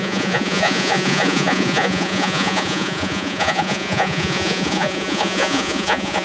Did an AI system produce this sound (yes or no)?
yes